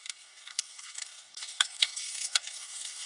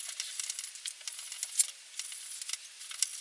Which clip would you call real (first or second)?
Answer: second